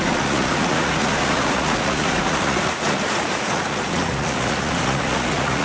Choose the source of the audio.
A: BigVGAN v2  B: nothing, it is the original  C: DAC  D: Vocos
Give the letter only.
D